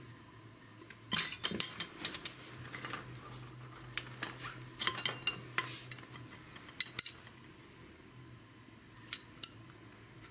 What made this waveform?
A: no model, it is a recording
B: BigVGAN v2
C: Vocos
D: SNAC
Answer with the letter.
A